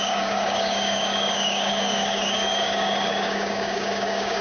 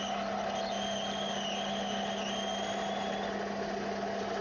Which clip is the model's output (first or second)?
first